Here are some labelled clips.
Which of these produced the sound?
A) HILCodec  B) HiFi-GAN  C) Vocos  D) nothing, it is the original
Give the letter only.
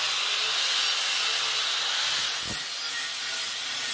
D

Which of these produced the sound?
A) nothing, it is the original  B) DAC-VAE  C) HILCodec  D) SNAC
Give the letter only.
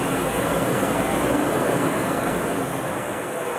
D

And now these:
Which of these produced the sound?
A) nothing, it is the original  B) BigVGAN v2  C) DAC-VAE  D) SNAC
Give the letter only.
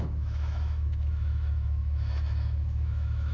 C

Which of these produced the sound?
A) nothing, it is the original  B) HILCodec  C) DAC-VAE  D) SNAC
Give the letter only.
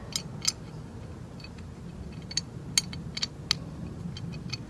A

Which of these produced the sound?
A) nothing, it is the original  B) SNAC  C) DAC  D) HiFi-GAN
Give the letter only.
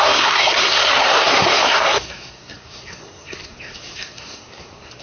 B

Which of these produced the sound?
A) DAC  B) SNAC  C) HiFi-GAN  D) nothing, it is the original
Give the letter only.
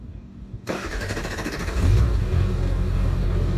A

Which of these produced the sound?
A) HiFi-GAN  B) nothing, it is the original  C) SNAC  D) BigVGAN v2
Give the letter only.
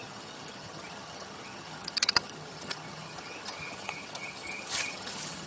A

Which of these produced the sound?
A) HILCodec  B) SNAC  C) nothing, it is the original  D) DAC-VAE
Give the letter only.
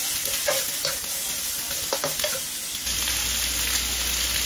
C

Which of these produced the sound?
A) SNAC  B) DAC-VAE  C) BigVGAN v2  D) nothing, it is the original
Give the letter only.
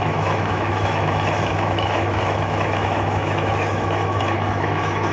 B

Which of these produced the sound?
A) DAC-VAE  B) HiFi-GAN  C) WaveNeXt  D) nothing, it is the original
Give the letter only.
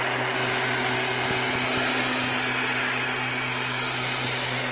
D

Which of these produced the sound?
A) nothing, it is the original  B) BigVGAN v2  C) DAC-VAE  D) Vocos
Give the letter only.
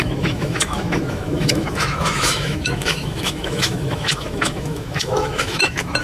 C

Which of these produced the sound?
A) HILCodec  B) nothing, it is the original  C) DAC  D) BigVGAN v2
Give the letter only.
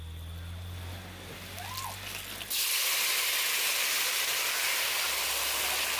B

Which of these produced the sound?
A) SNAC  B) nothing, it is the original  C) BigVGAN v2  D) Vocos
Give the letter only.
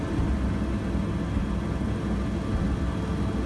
B